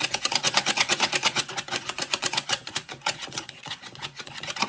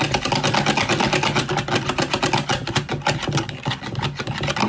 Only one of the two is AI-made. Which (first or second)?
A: first